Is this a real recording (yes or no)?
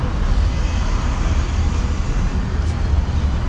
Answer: yes